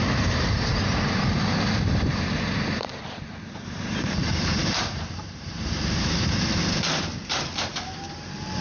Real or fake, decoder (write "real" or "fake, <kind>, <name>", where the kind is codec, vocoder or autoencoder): fake, vocoder, BigVGAN v2